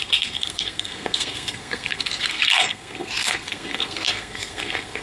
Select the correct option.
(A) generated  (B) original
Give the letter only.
A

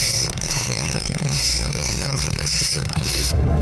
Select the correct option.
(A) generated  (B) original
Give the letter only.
A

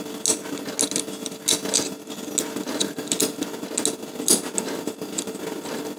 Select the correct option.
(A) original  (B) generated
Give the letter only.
A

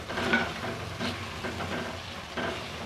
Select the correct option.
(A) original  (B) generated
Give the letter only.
A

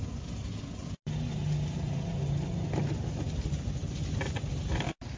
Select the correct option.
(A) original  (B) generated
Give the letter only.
A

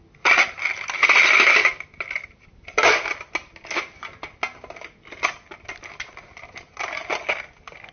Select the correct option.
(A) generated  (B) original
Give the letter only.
B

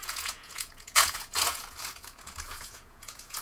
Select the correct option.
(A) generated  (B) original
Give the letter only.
A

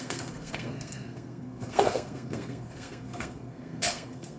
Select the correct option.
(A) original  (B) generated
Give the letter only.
B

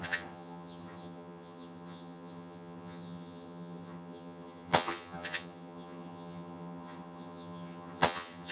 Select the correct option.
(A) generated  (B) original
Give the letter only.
A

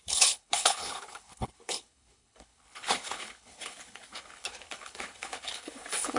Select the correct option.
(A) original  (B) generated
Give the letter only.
B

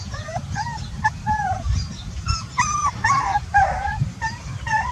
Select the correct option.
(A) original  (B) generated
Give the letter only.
B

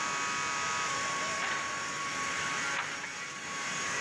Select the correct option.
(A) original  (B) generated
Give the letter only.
A